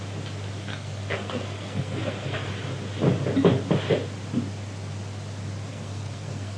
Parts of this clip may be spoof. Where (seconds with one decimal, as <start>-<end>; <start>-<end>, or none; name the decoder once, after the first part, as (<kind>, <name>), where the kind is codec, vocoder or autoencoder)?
0.7-2.5 (codec, SNAC); 5.7-6.6